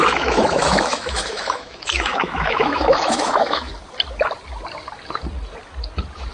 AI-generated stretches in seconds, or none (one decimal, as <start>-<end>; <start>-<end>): 0.0-3.7